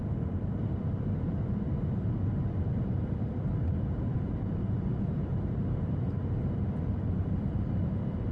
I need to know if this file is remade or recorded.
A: remade